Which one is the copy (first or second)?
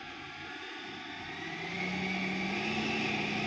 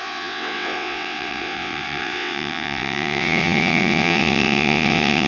second